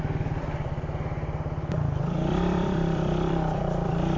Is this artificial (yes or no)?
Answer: yes